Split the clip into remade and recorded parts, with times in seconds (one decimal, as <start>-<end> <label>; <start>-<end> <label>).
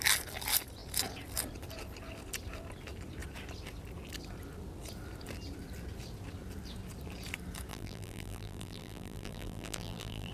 0.0-7.7 recorded; 7.7-10.3 remade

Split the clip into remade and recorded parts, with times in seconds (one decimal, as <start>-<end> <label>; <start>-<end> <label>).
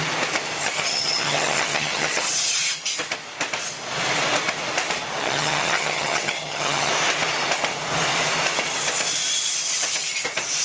0.0-0.6 recorded; 0.6-2.3 remade; 2.3-5.2 recorded; 5.2-6.9 remade; 6.9-10.6 recorded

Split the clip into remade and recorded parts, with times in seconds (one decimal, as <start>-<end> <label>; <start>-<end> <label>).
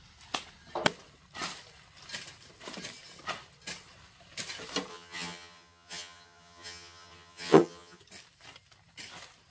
0.0-4.9 recorded; 4.9-8.0 remade; 8.0-9.5 recorded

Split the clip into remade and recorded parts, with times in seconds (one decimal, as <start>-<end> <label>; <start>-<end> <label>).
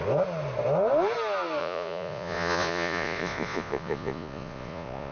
0.0-1.6 recorded; 1.6-5.1 remade